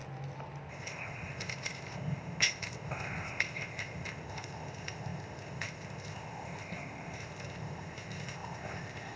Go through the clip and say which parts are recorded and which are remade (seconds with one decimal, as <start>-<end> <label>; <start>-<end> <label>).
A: 0.0-0.7 recorded; 0.7-9.2 remade